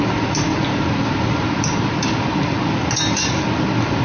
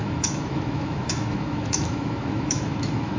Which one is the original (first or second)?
first